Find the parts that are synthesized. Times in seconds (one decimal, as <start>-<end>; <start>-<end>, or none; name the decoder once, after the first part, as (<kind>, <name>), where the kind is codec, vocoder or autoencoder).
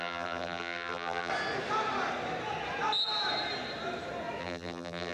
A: 0.0-1.3 (vocoder, BigVGAN v2); 4.4-5.1